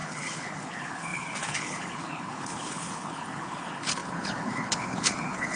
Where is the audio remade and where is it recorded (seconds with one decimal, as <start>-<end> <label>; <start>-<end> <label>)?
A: 0.0-5.6 remade